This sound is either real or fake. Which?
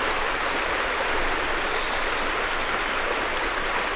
real